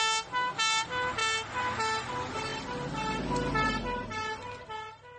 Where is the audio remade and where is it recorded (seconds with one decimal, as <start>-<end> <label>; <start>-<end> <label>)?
0.0-5.2 recorded